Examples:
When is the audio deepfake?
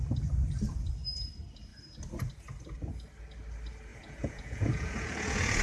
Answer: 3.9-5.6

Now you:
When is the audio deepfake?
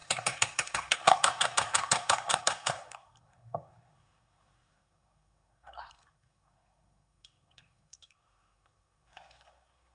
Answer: 0.0-9.9